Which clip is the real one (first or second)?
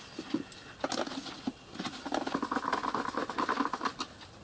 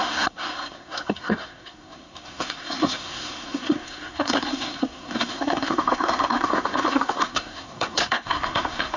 first